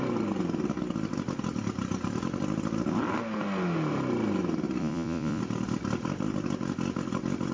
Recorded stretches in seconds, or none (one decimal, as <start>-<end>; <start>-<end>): 0.0-4.8; 5.4-7.5